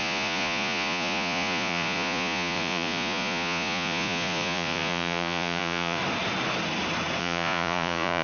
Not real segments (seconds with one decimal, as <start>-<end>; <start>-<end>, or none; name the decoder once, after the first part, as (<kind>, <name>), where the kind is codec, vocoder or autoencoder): 0.0-6.0 (vocoder, Vocos); 7.2-8.2